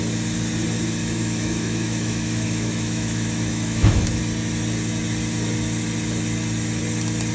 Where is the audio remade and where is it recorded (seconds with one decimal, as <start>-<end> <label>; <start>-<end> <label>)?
0.0-1.0 recorded; 1.0-4.2 remade; 4.2-7.3 recorded